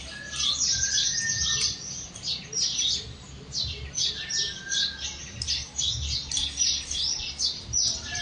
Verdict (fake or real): real